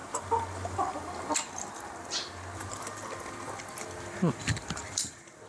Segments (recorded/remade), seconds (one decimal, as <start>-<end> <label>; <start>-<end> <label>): 0.0-5.5 recorded